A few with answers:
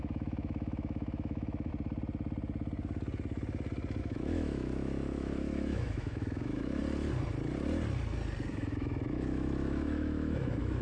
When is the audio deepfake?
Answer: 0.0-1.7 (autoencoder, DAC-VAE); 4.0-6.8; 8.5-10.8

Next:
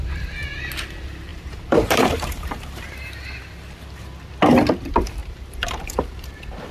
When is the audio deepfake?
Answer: 1.3-3.4 (vocoder, BigVGAN v2); 5.2-6.3

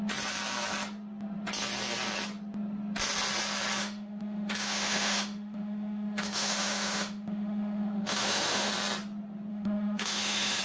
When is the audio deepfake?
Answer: 3.8-8.7 (autoencoder, DAC-VAE); 9.5-10.6

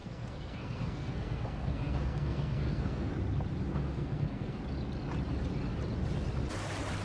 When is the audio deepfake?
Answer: 0.0-3.1 (codec, SNAC); 3.7-4.6

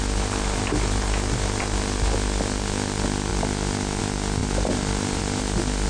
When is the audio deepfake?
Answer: 4.4-5.2 (vocoder, BigVGAN v2)

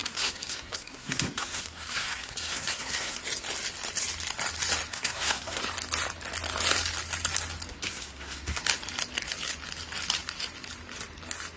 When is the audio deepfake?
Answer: 0.0-3.2 (codec, SNAC); 4.9-5.6; 7.7-8.6

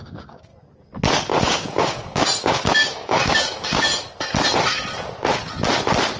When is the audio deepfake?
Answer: 0.0-0.5 (codec, DAC); 1.4-3.9

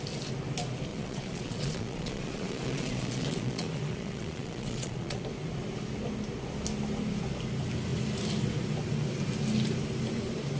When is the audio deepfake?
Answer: 0.9-5.2 (vocoder, Vocos)